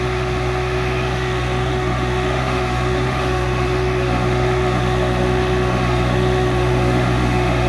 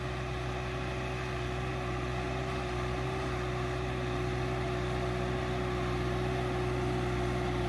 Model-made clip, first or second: first